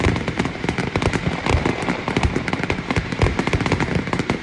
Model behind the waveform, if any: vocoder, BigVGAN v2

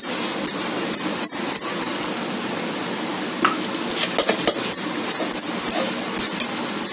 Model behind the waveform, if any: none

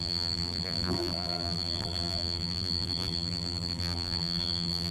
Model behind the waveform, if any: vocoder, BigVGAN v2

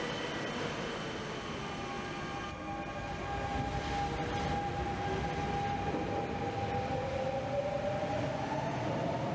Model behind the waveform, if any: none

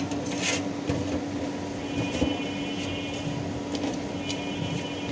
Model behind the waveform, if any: none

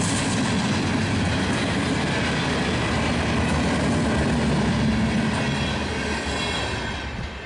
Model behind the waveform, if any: none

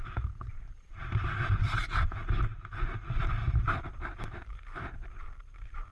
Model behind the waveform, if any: vocoder, BigVGAN v2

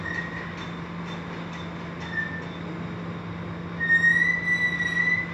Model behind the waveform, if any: none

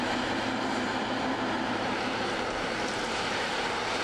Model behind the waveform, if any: vocoder, BigVGAN v2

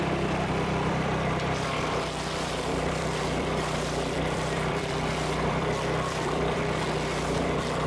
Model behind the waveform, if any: vocoder, BigVGAN v2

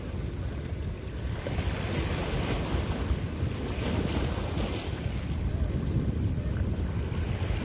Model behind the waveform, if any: vocoder, BigVGAN v2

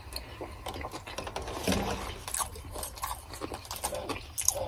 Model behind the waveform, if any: none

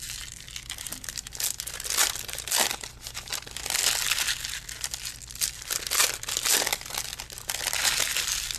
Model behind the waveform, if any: none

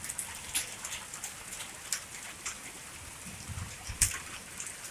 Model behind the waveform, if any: none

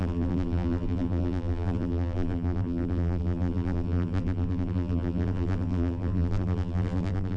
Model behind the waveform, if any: vocoder, BigVGAN v2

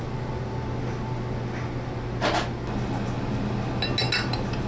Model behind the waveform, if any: none